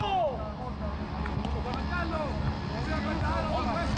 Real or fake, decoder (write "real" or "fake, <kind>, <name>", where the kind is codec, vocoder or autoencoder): real